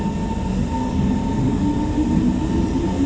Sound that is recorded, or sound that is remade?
recorded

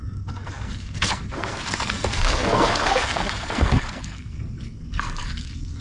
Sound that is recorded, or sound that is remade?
remade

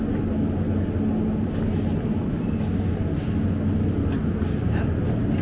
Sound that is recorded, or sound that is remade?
recorded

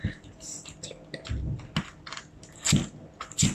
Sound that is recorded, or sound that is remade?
recorded